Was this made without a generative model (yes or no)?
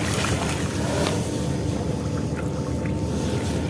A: yes